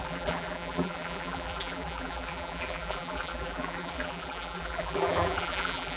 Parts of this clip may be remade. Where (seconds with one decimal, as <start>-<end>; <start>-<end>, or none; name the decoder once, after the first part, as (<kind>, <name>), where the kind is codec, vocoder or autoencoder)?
0.0-6.0 (vocoder, BigVGAN v2)